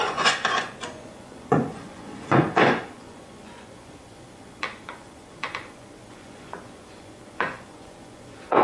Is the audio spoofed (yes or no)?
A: yes